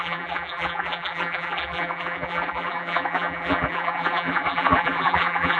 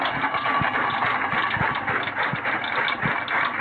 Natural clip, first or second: second